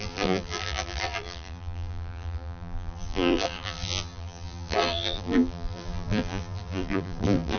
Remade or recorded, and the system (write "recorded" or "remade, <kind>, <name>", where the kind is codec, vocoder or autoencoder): remade, vocoder, BigVGAN v2